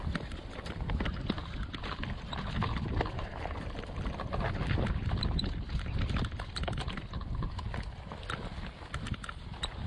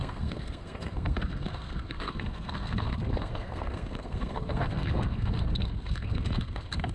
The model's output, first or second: second